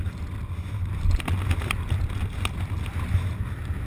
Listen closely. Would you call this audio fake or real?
real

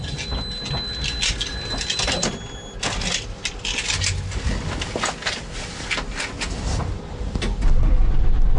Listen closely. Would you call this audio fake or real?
real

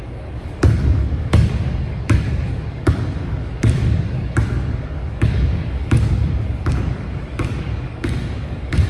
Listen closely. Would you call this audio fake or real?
fake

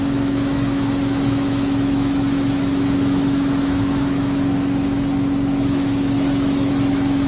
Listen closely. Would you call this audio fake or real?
fake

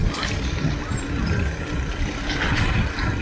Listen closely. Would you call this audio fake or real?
real